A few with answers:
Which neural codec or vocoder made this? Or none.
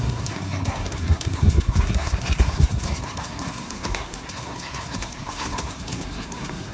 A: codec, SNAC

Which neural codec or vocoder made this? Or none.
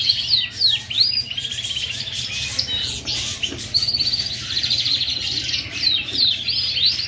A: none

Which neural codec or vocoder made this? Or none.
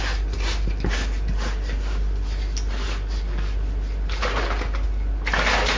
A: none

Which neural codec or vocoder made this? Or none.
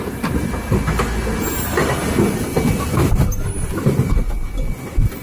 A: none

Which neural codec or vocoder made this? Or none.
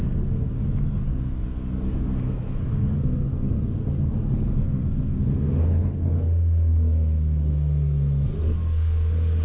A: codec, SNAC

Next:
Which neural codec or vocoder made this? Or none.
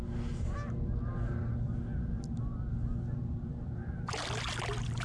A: none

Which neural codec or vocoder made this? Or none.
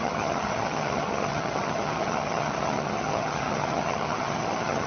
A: vocoder, HiFi-GAN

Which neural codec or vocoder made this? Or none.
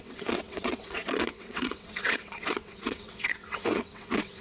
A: vocoder, WaveNeXt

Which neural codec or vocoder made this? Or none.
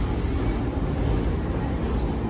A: none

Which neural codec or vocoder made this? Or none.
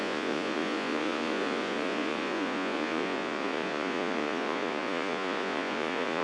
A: vocoder, Vocos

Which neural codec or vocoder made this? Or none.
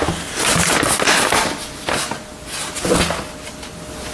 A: none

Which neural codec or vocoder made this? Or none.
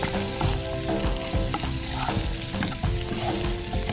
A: none